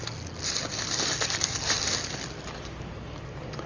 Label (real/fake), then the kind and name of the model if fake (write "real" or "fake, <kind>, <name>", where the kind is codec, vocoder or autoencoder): real